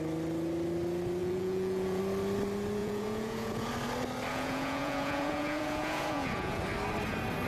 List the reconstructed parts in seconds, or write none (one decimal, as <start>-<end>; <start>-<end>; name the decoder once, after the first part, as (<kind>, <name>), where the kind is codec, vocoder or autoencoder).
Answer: 1.2-2.0 (vocoder, Vocos); 2.8-3.7; 4.3-6.6

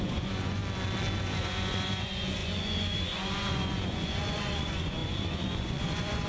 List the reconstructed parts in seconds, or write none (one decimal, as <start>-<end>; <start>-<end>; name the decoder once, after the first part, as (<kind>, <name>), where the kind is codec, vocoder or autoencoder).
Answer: 0.0-0.6 (vocoder, Vocos); 1.2-6.3

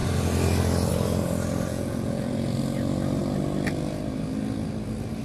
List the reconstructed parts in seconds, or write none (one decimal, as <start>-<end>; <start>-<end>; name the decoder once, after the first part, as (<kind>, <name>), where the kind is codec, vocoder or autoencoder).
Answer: 1.7-2.5 (vocoder, Vocos)

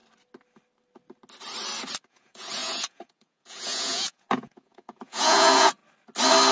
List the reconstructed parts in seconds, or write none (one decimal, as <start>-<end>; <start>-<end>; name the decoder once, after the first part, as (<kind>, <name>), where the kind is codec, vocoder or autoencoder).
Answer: 2.1-5.8 (vocoder, Vocos)

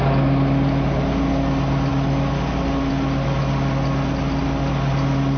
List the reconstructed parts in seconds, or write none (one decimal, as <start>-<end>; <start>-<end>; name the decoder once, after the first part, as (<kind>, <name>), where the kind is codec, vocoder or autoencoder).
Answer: none

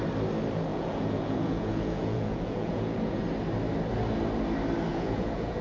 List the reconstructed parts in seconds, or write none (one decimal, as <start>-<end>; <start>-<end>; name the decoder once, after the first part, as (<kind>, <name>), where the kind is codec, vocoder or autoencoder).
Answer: 0.7-3.2 (vocoder, Vocos); 4.9-5.6